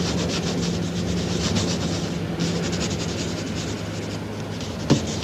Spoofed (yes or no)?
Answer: no